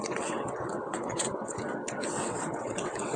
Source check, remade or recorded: remade